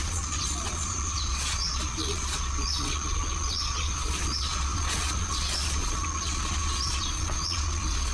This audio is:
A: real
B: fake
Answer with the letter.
B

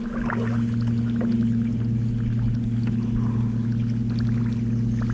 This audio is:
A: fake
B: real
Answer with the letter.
B